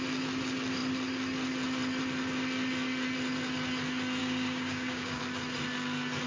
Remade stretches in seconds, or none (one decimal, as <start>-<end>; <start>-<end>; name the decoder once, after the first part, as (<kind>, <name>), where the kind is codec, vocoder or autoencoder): 4.2-5.2 (codec, DAC)